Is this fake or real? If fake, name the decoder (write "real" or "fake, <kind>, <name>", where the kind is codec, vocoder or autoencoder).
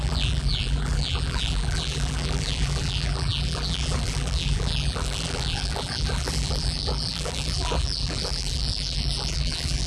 fake, vocoder, BigVGAN v2